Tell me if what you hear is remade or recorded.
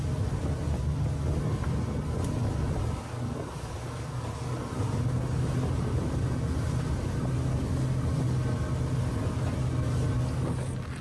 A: recorded